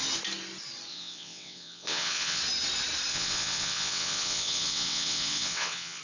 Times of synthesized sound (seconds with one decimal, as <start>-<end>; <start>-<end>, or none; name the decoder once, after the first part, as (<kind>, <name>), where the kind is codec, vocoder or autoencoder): 0.9-2.4 (vocoder, WaveNeXt); 3.1-6.0